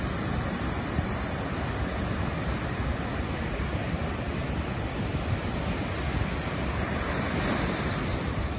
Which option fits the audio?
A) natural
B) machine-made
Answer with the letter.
A